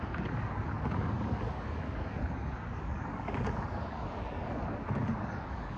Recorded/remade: remade